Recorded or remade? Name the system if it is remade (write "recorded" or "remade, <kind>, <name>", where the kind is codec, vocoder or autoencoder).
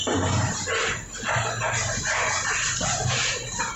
recorded